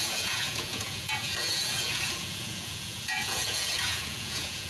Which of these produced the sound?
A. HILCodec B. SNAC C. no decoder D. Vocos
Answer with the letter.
D